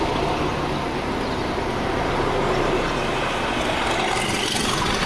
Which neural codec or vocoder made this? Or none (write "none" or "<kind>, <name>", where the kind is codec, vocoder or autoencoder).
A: none